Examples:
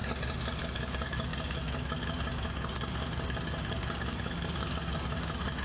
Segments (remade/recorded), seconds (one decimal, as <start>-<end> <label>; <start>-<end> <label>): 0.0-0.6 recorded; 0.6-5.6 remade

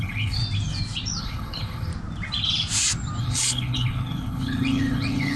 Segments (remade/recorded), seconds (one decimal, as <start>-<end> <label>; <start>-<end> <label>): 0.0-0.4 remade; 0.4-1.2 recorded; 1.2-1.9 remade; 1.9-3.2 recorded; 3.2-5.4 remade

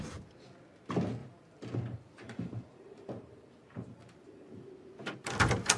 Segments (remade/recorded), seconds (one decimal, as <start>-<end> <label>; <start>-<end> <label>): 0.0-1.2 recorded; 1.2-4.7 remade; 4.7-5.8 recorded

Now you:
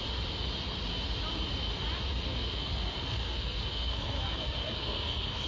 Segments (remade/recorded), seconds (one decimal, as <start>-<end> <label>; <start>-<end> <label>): 0.0-2.1 recorded; 2.1-5.5 remade

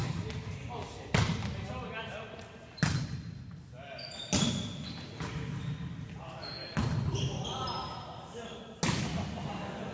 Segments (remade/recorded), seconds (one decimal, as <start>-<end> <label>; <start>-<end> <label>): 0.0-9.9 recorded

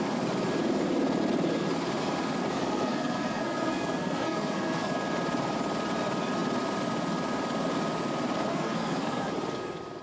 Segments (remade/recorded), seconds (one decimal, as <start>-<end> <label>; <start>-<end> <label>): 0.0-2.5 recorded; 2.5-4.9 remade; 4.9-8.5 recorded; 8.5-9.3 remade; 9.3-10.0 recorded